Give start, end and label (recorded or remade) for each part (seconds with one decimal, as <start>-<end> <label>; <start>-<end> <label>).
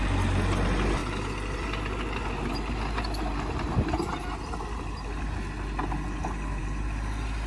0.0-7.5 recorded